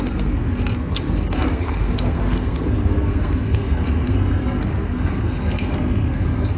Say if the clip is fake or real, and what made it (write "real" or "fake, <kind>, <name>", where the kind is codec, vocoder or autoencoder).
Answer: fake, codec, SNAC